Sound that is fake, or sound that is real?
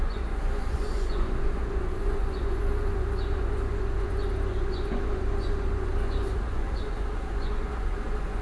fake